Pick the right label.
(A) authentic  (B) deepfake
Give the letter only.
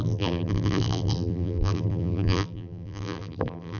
B